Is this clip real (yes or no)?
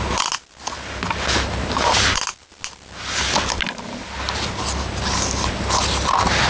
yes